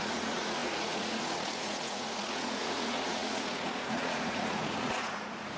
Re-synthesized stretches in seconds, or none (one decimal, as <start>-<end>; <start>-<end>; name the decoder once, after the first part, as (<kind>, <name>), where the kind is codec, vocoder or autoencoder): 0.0-5.6 (vocoder, Vocos)